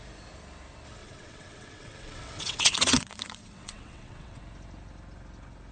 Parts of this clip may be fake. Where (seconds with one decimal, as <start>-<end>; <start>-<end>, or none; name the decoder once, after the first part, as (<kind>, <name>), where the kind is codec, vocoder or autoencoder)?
1.0-4.4 (vocoder, WaveNeXt)